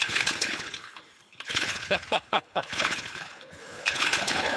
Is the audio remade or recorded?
remade